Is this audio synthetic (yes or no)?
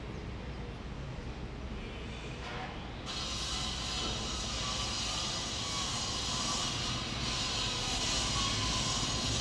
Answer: no